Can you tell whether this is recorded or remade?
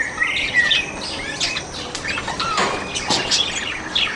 recorded